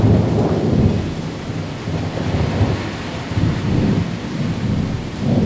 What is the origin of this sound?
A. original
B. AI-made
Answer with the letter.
A